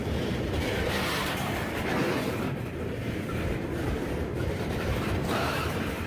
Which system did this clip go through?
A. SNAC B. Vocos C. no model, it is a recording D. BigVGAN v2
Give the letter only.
D